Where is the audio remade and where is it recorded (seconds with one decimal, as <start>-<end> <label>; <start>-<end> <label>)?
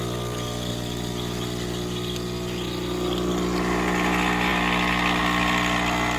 0.0-6.2 recorded